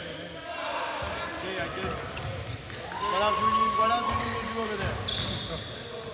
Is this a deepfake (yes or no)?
no